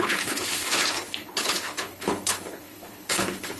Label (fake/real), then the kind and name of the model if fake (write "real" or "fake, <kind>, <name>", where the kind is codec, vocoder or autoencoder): fake, codec, HILCodec